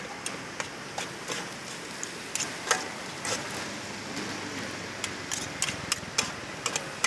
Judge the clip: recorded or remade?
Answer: recorded